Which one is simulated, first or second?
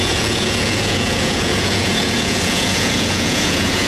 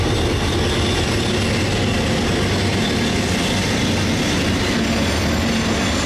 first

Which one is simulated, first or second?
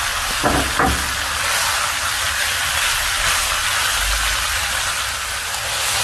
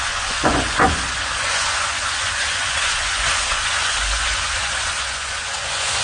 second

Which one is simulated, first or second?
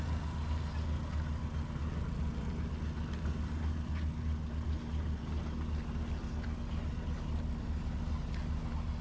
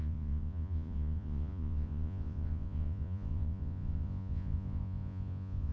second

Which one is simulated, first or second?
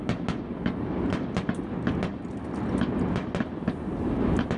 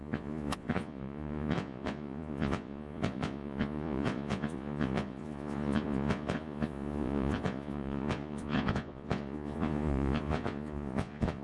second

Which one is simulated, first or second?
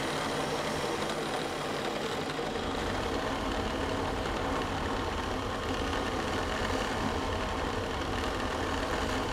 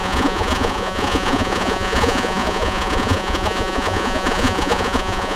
second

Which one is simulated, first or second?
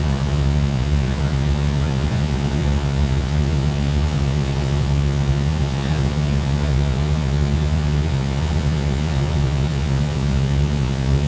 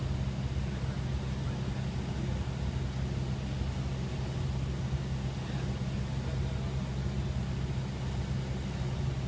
first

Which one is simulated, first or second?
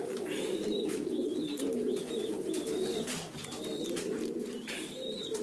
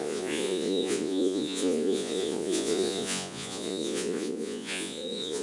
second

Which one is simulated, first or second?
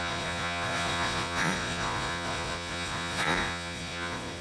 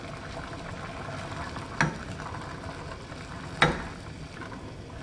first